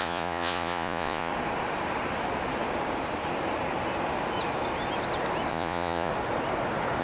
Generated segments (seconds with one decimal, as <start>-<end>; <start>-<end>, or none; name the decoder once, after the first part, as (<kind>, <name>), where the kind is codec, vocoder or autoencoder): 0.0-1.3 (vocoder, Vocos); 5.5-6.1